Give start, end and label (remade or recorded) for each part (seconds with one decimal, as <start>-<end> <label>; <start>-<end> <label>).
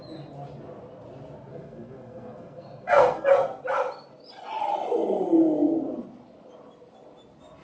0.0-1.5 recorded; 1.5-3.3 remade; 3.3-7.6 recorded